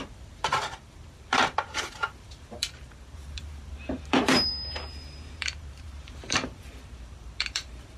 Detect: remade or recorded remade